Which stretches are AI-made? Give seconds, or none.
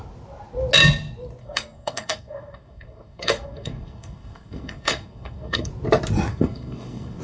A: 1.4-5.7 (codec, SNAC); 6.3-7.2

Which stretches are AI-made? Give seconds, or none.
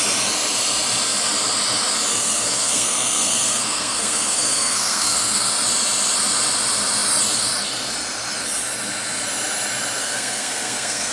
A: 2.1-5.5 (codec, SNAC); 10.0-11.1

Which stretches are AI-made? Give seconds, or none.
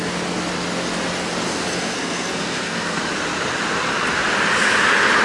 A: 1.5-3.0 (codec, SNAC)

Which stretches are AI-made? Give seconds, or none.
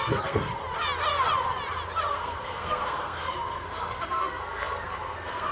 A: 0.0-0.6 (codec, SNAC); 2.1-5.5